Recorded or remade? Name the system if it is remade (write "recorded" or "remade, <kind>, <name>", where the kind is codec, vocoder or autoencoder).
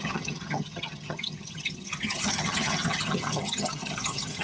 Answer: remade, vocoder, HiFi-GAN